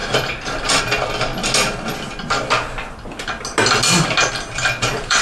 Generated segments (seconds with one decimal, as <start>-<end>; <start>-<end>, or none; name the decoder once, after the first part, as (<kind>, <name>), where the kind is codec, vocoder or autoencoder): 0.0-1.3 (vocoder, BigVGAN v2); 4.3-5.2